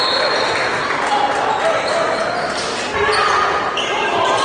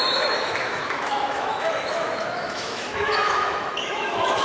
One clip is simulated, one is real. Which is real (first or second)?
first